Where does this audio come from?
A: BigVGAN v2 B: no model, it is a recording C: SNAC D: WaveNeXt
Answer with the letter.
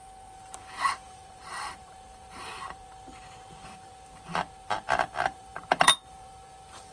A